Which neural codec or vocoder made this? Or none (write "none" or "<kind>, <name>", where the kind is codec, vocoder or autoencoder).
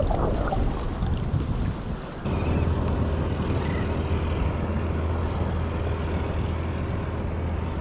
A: none